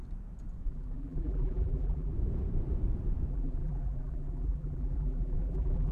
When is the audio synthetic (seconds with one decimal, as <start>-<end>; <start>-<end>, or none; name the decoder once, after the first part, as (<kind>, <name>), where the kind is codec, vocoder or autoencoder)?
0.7-2.1 (vocoder, BigVGAN v2); 3.3-5.9